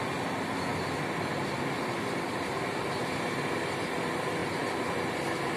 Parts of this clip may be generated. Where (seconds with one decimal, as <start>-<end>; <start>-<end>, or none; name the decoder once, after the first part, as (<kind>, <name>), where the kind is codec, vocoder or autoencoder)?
0.7-3.9 (vocoder, BigVGAN v2)